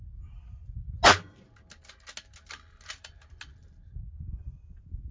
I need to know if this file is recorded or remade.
recorded